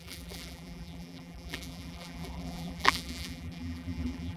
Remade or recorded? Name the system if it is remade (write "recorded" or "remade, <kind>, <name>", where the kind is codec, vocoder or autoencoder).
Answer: remade, vocoder, BigVGAN v2